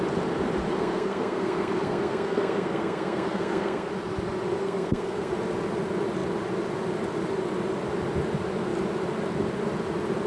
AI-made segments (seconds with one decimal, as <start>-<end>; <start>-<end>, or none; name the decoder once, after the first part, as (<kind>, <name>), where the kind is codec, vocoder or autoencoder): 0.7-3.9 (codec, SNAC); 4.6-5.3